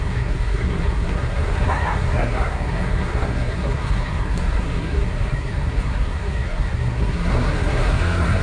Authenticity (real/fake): fake